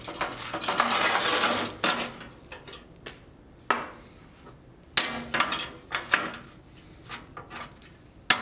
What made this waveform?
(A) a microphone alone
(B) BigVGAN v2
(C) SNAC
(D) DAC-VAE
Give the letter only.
A